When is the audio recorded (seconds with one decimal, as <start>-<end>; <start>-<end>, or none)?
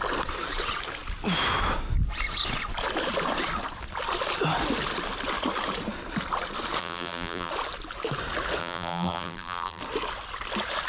0.0-6.8; 7.5-8.6; 9.8-10.9